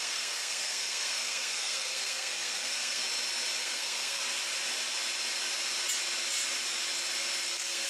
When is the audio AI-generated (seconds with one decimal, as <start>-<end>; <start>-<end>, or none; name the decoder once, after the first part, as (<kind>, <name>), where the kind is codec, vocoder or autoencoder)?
0.0-3.0 (codec, SNAC); 3.6-4.2; 7.5-7.9